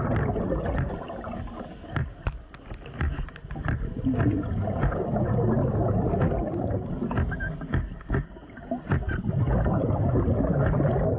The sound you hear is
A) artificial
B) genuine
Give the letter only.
B